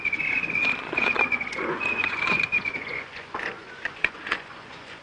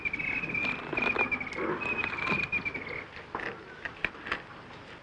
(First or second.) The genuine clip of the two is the second